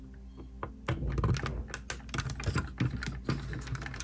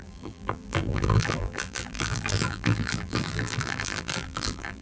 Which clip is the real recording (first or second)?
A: first